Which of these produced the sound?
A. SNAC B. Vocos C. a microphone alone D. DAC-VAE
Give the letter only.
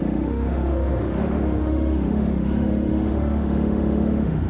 D